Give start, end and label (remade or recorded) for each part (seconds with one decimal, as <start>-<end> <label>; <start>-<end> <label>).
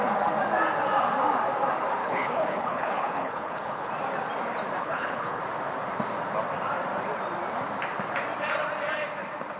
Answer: 0.0-2.0 recorded; 2.0-3.9 remade; 3.9-4.8 recorded; 4.8-5.4 remade; 5.4-9.6 recorded